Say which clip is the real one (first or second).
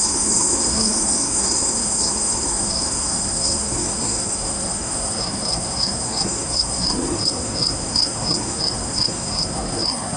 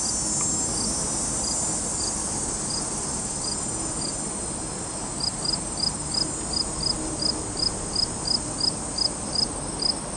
second